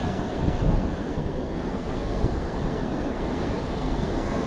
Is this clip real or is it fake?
fake